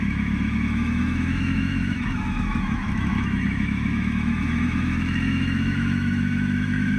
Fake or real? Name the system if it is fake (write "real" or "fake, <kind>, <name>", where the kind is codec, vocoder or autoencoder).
fake, autoencoder, DAC-VAE